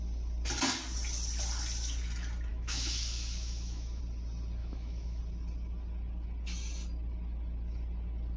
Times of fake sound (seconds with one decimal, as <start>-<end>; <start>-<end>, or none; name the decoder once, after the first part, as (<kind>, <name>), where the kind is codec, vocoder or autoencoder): 2.5-4.0 (autoencoder, DAC-VAE); 4.6-5.2